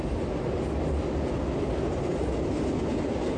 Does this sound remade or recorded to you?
recorded